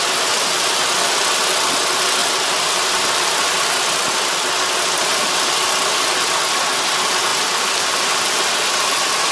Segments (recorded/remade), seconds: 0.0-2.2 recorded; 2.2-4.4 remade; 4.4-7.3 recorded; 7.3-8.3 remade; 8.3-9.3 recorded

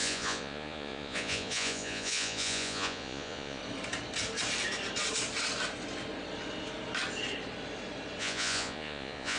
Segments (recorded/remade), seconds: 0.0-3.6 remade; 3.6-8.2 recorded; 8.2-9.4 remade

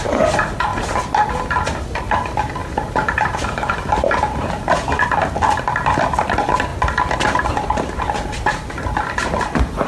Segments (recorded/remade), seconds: 0.0-0.7 recorded; 0.7-1.4 remade; 1.4-2.6 recorded; 2.6-4.2 remade; 4.2-9.9 recorded

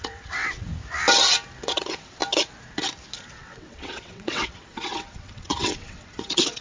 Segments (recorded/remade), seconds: 0.0-0.7 remade; 0.7-1.6 recorded; 1.6-2.2 remade; 2.2-3.3 recorded; 3.3-6.6 remade

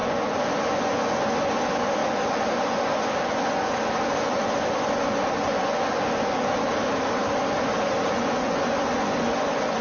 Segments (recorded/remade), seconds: 0.0-6.7 remade; 6.7-8.1 recorded; 8.1-9.8 remade

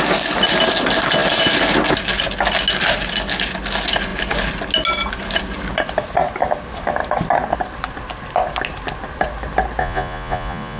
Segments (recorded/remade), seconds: 0.0-9.8 recorded; 9.8-10.8 remade

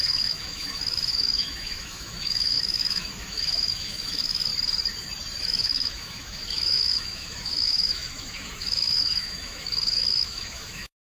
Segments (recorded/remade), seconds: 0.0-4.5 remade; 4.5-5.4 recorded; 5.4-11.1 remade